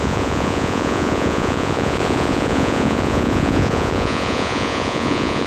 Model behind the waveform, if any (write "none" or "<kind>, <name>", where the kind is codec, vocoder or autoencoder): vocoder, Vocos